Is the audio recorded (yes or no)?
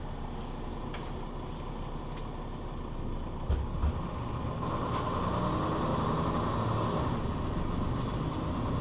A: yes